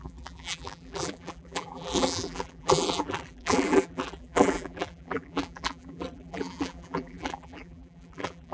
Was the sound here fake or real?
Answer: fake